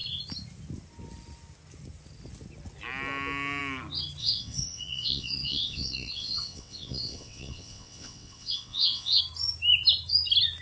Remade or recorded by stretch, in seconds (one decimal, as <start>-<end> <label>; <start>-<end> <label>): 0.0-4.2 recorded; 4.2-9.2 remade; 9.2-10.6 recorded

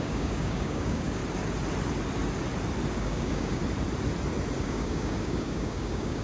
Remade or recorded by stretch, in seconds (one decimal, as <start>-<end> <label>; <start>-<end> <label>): 0.0-1.2 remade; 1.2-2.9 recorded; 2.9-3.6 remade; 3.6-4.6 recorded; 4.6-6.2 remade

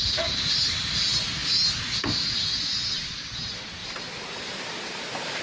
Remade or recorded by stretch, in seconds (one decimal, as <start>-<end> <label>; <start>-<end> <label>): 0.0-0.6 remade; 0.6-3.8 recorded; 3.8-5.4 remade

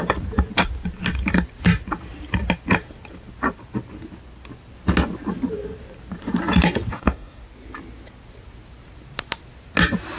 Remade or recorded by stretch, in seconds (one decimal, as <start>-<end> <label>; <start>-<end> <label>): 0.0-6.9 recorded; 6.9-7.4 remade; 7.4-10.2 recorded

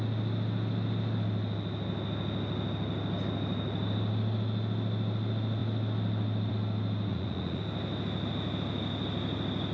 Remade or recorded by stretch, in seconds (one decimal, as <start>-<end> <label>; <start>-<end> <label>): 0.0-7.1 recorded; 7.1-7.6 remade; 7.6-9.7 recorded

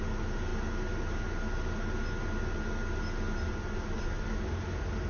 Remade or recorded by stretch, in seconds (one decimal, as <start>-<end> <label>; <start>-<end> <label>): 0.0-5.1 recorded